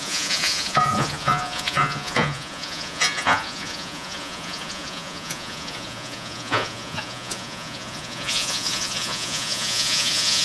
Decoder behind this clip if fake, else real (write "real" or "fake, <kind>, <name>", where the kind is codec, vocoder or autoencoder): fake, vocoder, Vocos